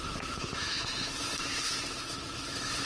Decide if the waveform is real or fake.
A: fake